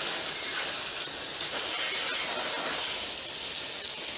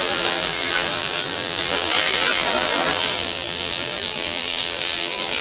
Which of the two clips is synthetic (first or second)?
second